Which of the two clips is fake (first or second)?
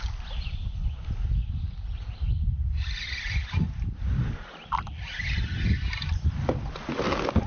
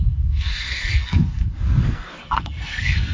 second